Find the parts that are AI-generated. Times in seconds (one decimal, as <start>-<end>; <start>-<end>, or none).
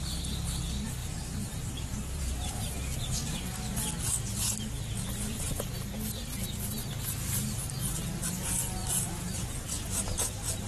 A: 1.0-2.5; 8.8-9.4